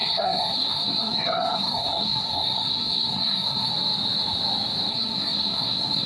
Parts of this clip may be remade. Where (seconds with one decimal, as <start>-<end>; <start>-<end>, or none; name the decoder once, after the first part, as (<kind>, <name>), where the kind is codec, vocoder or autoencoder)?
0.0-3.7 (codec, SNAC); 4.9-6.1